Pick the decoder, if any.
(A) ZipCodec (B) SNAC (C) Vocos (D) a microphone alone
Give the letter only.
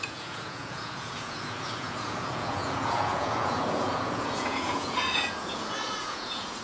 C